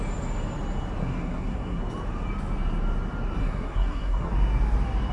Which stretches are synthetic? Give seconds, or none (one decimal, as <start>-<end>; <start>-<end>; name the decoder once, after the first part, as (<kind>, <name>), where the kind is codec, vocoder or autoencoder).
1.0-1.8 (codec, SNAC); 3.4-4.3